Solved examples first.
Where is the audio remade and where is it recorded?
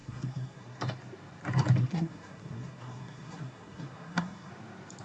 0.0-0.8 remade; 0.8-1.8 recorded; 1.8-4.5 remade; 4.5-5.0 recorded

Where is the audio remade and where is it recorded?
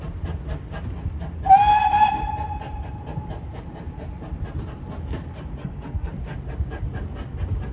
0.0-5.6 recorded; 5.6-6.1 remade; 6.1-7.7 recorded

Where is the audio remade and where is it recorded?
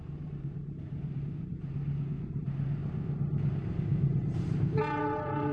0.0-2.8 remade; 2.8-3.5 recorded; 3.5-5.5 remade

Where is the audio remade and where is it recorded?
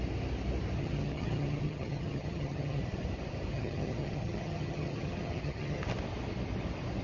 0.0-0.8 recorded; 0.8-2.8 remade; 2.8-3.5 recorded; 3.5-5.8 remade; 5.8-7.0 recorded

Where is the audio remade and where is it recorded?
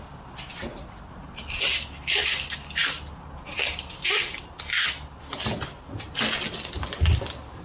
0.0-2.8 recorded; 2.8-3.9 remade; 3.9-7.6 recorded